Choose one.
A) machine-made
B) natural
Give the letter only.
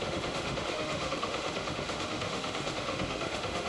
A